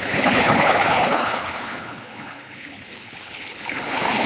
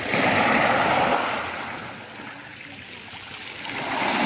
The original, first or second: second